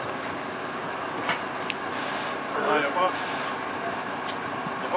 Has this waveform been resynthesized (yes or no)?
no